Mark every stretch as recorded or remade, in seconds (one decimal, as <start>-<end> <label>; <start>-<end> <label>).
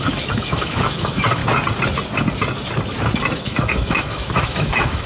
0.0-1.4 remade; 1.4-3.4 recorded; 3.4-5.1 remade